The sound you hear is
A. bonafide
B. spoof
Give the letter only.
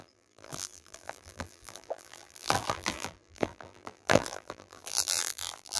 B